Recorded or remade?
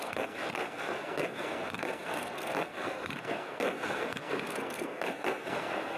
remade